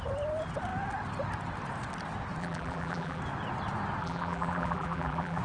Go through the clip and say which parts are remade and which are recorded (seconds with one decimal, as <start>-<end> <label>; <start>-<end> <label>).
0.0-2.4 recorded; 2.4-3.2 remade; 3.2-4.0 recorded; 4.0-5.4 remade